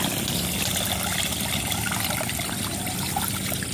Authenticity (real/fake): real